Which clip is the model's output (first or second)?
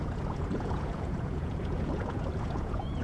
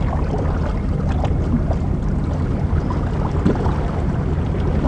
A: first